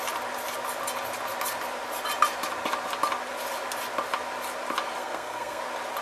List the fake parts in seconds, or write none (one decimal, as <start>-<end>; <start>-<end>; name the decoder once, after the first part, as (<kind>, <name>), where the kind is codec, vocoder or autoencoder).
5.0-5.6 (codec, SNAC)